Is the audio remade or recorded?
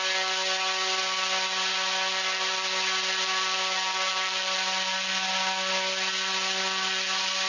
recorded